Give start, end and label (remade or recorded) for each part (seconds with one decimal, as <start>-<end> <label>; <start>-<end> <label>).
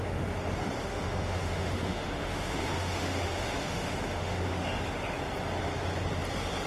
0.0-0.8 recorded; 0.8-4.8 remade; 4.8-6.7 recorded